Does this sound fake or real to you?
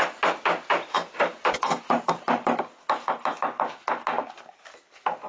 real